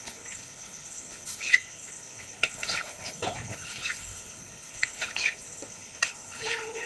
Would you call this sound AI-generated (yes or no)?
yes